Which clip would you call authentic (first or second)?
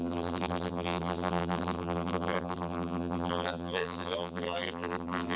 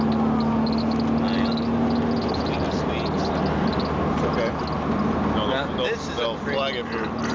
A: second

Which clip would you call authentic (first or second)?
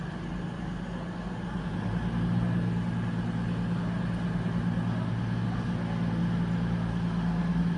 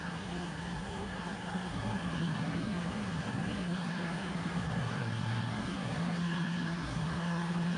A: first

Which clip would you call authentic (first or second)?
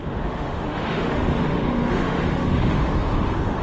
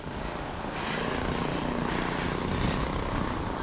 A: second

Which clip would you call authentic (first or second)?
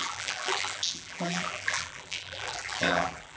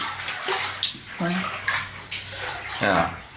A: second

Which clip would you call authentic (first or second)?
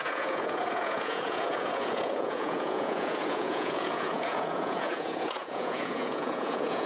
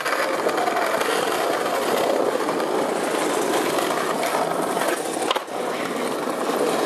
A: second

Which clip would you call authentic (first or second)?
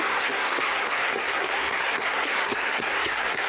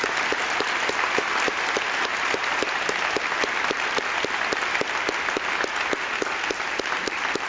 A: second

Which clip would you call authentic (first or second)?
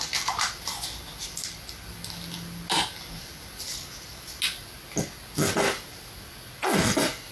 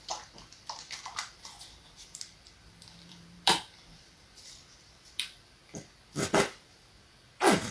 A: first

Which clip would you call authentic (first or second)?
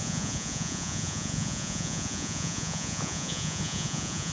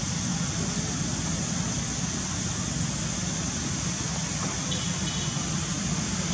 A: second